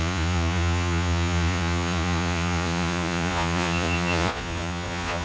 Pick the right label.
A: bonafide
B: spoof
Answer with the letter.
B